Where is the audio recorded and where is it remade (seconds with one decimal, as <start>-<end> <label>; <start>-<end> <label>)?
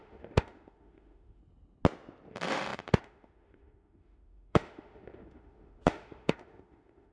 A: 0.0-1.4 remade; 1.4-2.3 recorded; 2.3-7.1 remade